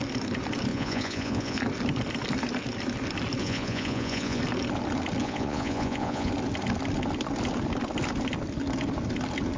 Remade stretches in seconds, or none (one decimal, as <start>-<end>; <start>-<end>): 0.7-1.6; 3.4-4.4; 5.2-6.3